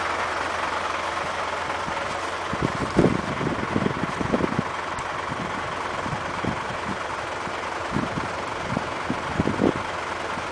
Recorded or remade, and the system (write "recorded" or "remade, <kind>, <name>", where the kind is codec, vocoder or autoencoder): recorded